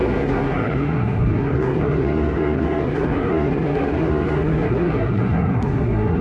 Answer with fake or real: fake